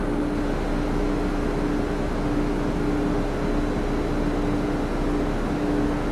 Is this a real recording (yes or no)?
yes